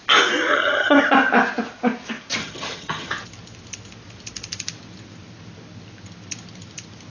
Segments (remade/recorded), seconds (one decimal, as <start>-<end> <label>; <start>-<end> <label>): 0.0-0.5 recorded; 0.5-1.0 remade; 1.0-2.4 recorded; 2.4-3.1 remade; 3.1-7.1 recorded